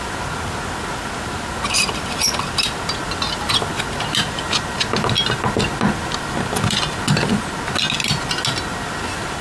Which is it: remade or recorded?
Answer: recorded